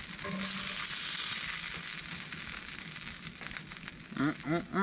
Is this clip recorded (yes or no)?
yes